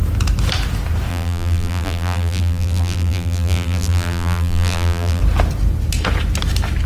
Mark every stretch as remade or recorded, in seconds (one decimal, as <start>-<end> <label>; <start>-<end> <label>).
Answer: 0.0-1.1 recorded; 1.1-5.2 remade; 5.2-6.9 recorded